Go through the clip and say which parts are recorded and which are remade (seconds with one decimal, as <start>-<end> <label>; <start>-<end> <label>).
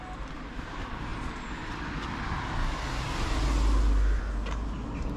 0.0-5.2 recorded